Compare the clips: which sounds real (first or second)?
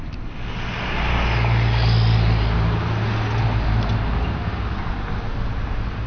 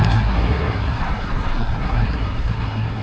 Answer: first